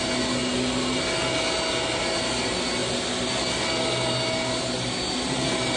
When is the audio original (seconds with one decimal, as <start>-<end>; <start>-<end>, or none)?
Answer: 0.0-5.8